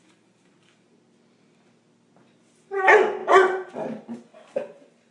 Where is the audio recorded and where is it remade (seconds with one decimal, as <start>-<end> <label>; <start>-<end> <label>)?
0.0-5.1 recorded